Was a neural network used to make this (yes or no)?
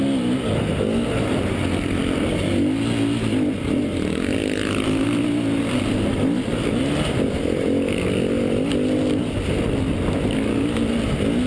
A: no